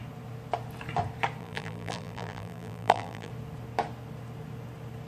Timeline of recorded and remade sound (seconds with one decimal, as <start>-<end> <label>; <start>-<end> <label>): 0.0-1.4 recorded; 1.4-3.3 remade; 3.3-5.1 recorded